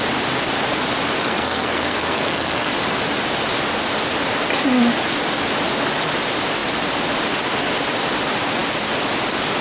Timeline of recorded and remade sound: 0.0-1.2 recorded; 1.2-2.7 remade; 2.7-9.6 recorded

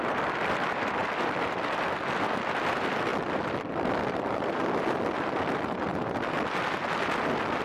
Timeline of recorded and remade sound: 0.0-5.9 remade; 5.9-7.6 recorded

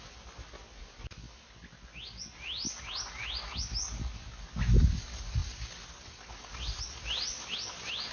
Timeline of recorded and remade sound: 0.0-8.1 recorded

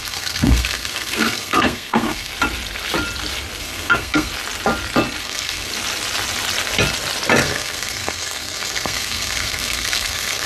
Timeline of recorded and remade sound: 0.0-2.3 remade; 2.3-3.6 recorded; 3.6-4.3 remade; 4.3-5.2 recorded; 5.2-5.7 remade; 5.7-7.4 recorded; 7.4-10.5 remade

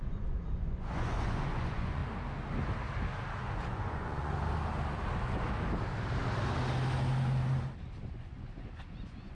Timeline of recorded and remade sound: 0.0-2.0 remade; 2.0-3.4 recorded; 3.4-4.3 remade; 4.3-8.0 recorded; 8.0-9.3 remade

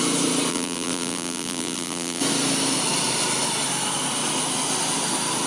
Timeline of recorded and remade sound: 0.0-0.5 recorded; 0.5-2.2 remade; 2.2-5.5 recorded

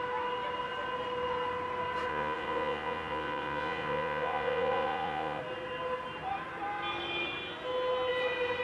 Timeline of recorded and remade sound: 0.0-2.1 recorded; 2.1-5.4 remade; 5.4-8.6 recorded

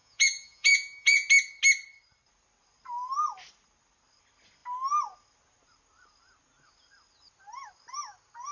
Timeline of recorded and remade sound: 0.0-1.3 remade; 1.3-8.5 recorded